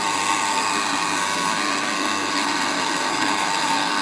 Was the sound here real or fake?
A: fake